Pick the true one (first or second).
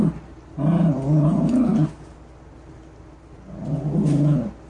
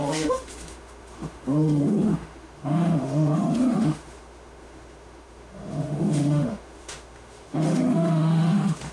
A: first